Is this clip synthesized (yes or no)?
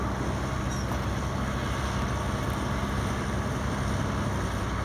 no